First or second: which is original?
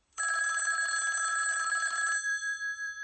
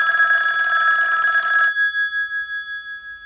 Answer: second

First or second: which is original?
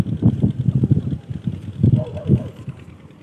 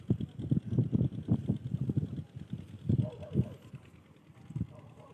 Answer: second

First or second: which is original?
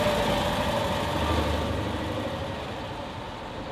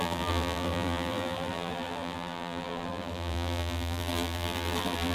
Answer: first